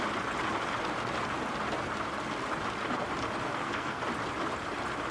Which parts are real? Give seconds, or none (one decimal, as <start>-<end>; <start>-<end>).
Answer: 0.0-3.5; 4.0-5.1